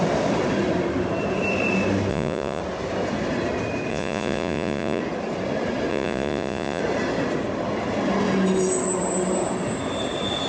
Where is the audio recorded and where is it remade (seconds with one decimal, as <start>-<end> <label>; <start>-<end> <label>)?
0.0-2.1 recorded; 2.1-2.6 remade; 2.6-3.9 recorded; 3.9-5.0 remade; 5.0-5.9 recorded; 5.9-6.8 remade; 6.8-10.5 recorded